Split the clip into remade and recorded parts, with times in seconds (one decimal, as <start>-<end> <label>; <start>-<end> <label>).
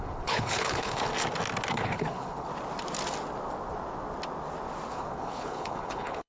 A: 0.0-1.1 remade; 1.1-1.7 recorded; 1.7-2.5 remade; 2.5-4.9 recorded; 4.9-6.3 remade